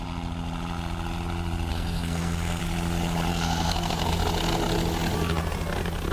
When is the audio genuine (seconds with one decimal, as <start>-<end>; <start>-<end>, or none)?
0.0-1.7; 2.6-3.3; 4.1-6.1